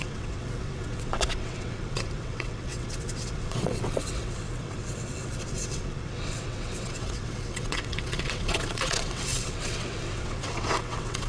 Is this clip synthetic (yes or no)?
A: yes